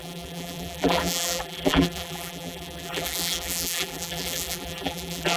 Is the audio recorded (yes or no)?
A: no